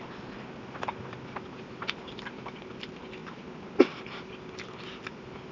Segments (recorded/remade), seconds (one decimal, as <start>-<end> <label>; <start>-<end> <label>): 0.0-5.5 recorded